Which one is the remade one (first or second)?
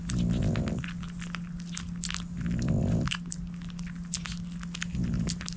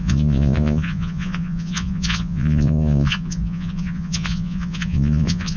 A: second